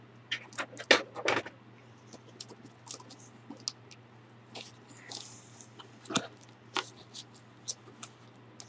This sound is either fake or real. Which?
real